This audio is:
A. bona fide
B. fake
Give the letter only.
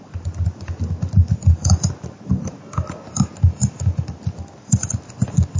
A